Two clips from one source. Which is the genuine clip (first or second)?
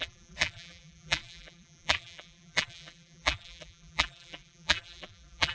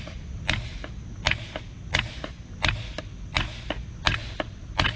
second